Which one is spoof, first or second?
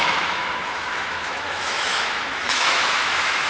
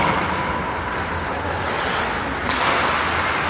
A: first